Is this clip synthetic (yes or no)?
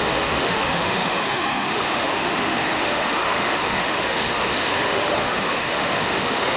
yes